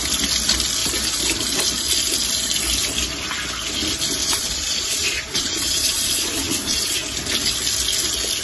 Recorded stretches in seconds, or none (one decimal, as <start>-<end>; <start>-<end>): 0.0-4.2; 7.0-8.4